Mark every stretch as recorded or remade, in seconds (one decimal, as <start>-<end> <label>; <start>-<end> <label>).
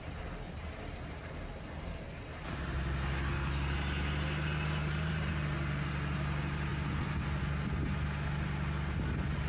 0.0-4.8 recorded; 4.8-5.3 remade; 5.3-9.5 recorded